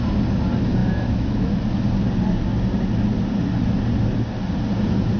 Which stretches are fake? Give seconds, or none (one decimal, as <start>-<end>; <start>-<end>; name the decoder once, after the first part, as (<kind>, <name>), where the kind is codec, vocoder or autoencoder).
0.8-1.6 (autoencoder, DAC-VAE)